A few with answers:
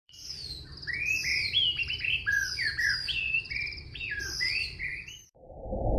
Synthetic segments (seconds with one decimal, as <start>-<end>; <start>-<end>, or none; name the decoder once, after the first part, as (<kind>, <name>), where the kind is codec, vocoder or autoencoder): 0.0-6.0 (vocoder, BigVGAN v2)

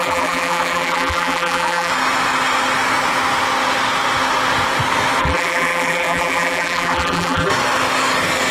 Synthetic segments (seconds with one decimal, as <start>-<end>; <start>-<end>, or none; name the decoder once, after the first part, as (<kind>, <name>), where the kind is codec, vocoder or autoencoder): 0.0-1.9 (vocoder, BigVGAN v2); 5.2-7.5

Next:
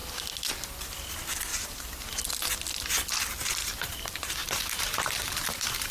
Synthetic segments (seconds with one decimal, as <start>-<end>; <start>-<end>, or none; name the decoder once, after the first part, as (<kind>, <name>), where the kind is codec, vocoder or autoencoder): 1.5-2.2 (vocoder, BigVGAN v2); 3.6-5.9

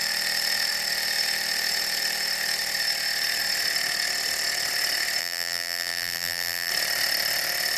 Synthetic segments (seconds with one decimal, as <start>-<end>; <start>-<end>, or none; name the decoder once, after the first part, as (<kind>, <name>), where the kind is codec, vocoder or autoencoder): 5.2-6.7 (vocoder, BigVGAN v2)

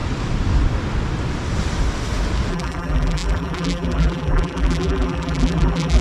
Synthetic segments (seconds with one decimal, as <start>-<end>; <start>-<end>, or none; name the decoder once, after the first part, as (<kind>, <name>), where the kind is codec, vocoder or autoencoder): 2.5-6.0 (vocoder, BigVGAN v2)

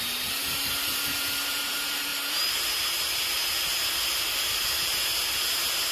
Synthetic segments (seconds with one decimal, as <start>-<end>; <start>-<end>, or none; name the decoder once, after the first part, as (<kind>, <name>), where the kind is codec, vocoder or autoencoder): 0.0-2.1 (vocoder, BigVGAN v2)

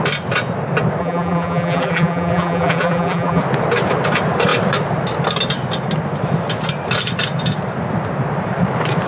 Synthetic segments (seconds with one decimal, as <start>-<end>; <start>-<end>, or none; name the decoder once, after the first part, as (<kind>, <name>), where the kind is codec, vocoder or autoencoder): 1.0-3.4 (vocoder, BigVGAN v2)

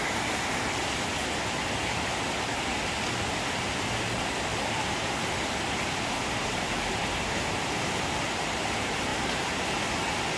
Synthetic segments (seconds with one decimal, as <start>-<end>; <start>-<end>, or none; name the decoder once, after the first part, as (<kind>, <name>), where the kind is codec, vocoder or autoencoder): 1.2-3.7 (vocoder, BigVGAN v2)